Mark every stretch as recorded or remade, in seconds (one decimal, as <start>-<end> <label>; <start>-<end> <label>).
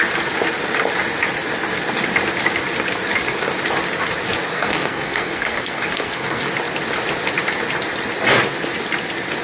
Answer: 0.0-4.5 recorded; 4.5-6.5 remade; 6.5-9.4 recorded